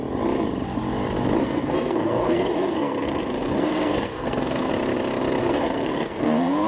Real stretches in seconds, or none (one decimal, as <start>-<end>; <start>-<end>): 0.0-1.4; 4.7-5.4